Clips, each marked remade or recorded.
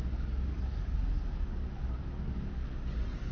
remade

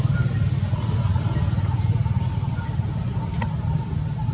recorded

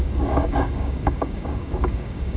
remade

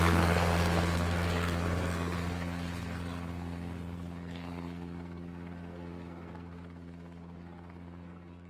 remade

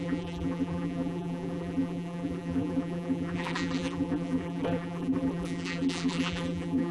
remade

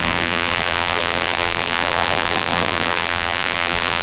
remade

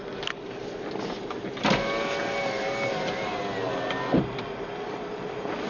recorded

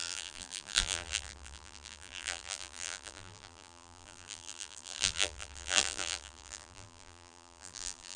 remade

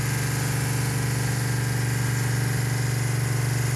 recorded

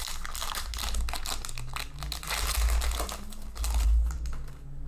recorded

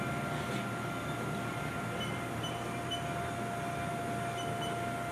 recorded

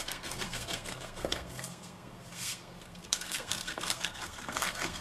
remade